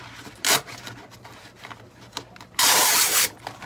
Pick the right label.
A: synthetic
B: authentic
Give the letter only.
B